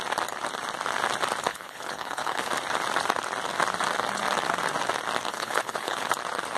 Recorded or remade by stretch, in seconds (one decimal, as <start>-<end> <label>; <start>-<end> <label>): 0.0-1.5 recorded; 1.5-2.5 remade; 2.5-5.3 recorded; 5.3-6.1 remade; 6.1-6.6 recorded